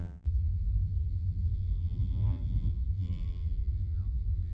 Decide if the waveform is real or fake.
fake